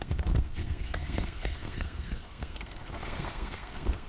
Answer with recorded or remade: remade